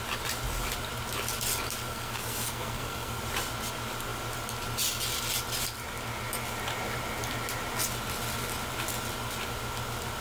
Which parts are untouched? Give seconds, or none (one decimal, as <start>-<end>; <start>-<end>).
0.0-1.9; 3.2-10.2